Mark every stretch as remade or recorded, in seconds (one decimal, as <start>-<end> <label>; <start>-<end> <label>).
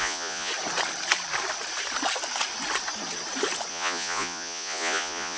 0.0-0.5 remade; 0.5-3.7 recorded; 3.7-5.4 remade